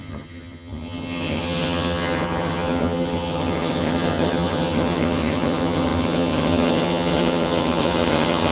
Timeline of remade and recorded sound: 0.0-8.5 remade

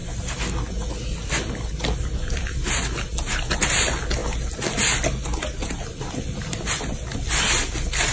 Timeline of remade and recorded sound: 0.0-8.1 recorded

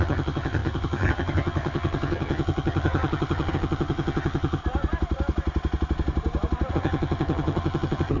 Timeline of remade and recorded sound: 0.0-4.6 remade; 4.6-6.7 recorded; 6.7-8.2 remade

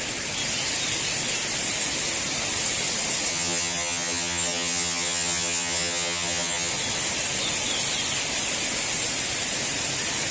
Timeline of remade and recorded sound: 0.0-3.3 recorded; 3.3-6.7 remade; 6.7-10.3 recorded